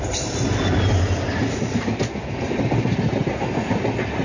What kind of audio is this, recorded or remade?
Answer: recorded